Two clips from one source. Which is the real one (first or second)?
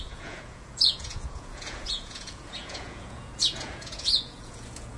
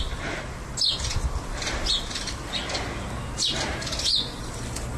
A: second